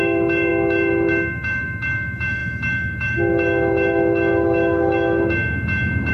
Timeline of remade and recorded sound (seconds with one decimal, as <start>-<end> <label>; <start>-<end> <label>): 0.0-6.1 remade